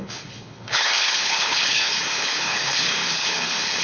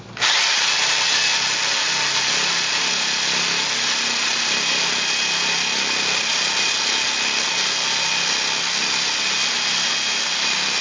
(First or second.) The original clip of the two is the second